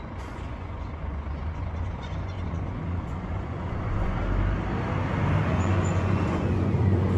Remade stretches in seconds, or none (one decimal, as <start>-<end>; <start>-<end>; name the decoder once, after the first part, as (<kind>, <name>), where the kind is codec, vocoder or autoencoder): 0.0-4.2 (vocoder, Vocos); 5.4-7.2